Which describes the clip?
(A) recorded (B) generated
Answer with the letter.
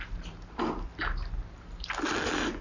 A